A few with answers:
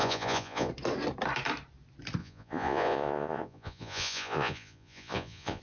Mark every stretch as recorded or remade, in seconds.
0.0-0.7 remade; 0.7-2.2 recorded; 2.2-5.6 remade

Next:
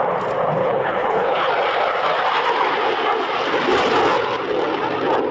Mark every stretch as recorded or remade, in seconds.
0.0-0.6 recorded; 0.6-1.5 remade; 1.5-5.3 recorded

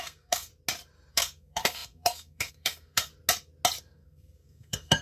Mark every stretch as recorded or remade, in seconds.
0.0-0.5 remade; 0.5-1.1 recorded; 1.1-3.1 remade; 3.1-3.8 recorded; 3.8-5.0 remade

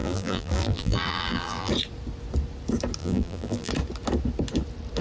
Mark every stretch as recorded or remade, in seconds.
0.0-1.7 remade; 1.7-3.0 recorded; 3.0-3.7 remade; 3.7-5.0 recorded

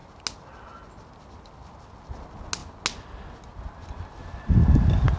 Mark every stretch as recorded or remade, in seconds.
0.0-5.2 recorded

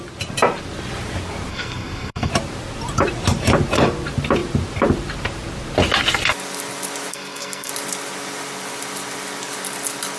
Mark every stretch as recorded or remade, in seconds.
0.0-1.5 recorded; 1.5-2.3 remade; 2.3-7.1 recorded; 7.1-7.7 remade; 7.7-10.2 recorded

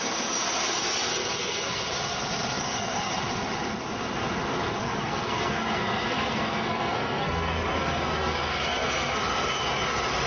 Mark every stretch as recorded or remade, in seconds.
0.0-1.1 recorded; 1.1-1.8 remade; 1.8-2.6 recorded; 2.6-3.1 remade; 3.1-4.8 recorded; 4.8-9.2 remade; 9.2-10.3 recorded

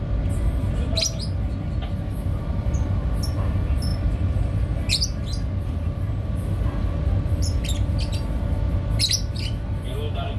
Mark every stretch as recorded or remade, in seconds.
0.0-10.4 recorded